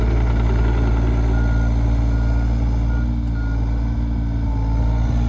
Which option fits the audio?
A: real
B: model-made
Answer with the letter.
A